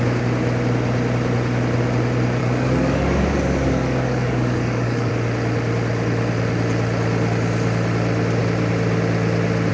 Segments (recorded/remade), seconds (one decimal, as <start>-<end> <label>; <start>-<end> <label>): 0.0-2.4 recorded; 2.4-5.1 remade; 5.1-9.7 recorded